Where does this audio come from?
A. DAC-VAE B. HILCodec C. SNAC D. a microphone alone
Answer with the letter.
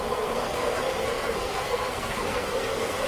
C